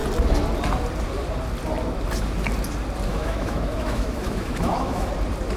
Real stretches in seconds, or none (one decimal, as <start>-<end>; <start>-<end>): 0.0-3.1; 5.1-5.6